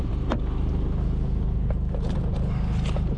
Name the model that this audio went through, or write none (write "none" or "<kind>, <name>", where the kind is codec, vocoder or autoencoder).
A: none